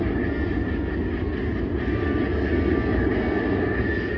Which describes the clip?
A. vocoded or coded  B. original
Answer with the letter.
B